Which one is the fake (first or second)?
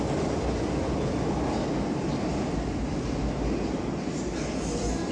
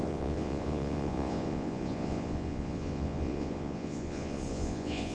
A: second